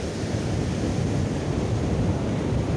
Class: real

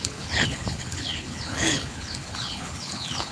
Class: fake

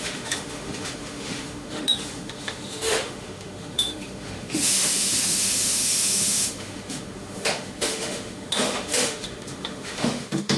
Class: fake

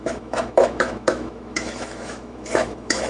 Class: fake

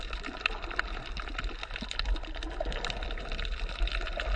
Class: real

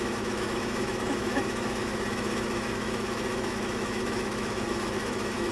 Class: fake